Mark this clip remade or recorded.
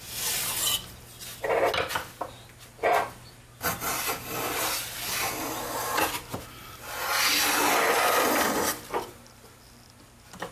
recorded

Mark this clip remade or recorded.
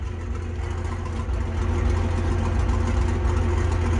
recorded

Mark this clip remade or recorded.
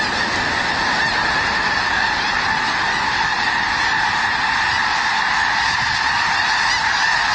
recorded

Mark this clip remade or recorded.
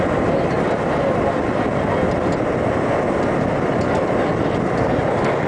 recorded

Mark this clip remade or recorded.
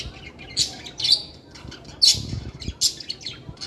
recorded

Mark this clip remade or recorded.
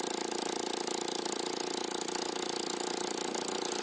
recorded